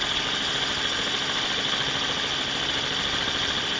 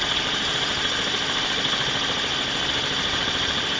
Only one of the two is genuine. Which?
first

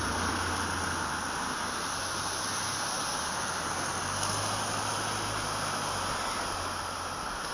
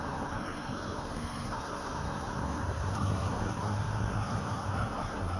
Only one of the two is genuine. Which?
first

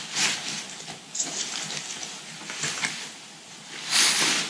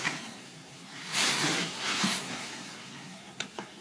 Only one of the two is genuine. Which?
first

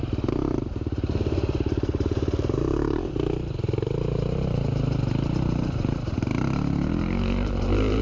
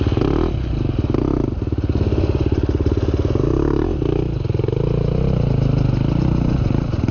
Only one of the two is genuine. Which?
second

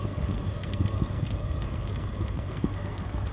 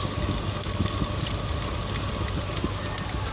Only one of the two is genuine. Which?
second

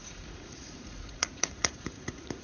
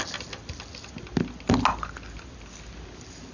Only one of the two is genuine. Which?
second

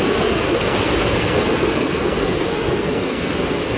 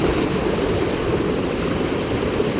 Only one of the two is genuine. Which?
second